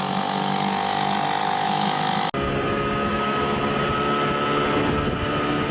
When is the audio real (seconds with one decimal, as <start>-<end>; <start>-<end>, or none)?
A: 0.0-1.4; 2.1-3.1; 3.6-5.7